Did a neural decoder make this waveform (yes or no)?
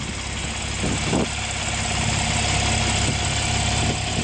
no